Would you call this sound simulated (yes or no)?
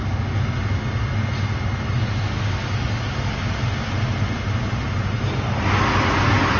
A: no